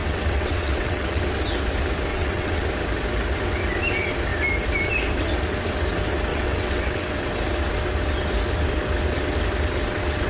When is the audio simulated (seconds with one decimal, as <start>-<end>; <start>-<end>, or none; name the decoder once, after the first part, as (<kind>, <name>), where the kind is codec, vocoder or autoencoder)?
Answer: 0.0-1.2 (vocoder, WaveNeXt); 2.1-2.6; 6.3-7.1